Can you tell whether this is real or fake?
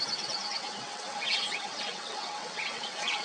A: fake